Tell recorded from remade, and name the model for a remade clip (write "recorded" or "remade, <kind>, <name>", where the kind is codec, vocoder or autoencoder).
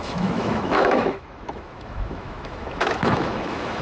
remade, autoencoder, DAC-VAE